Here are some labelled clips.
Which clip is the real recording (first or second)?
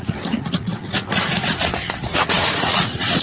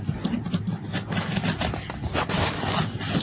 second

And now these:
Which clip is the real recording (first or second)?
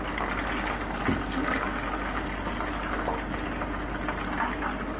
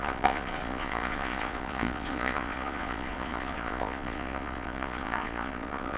first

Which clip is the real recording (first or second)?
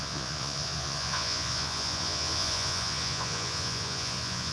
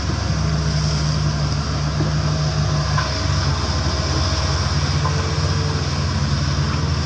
second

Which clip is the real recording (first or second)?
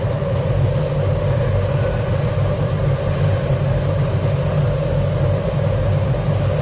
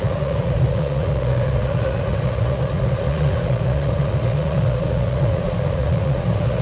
first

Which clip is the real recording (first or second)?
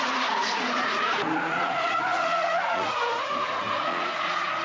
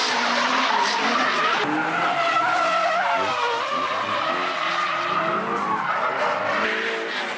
second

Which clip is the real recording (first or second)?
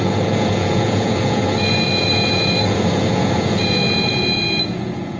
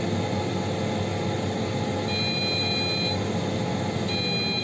second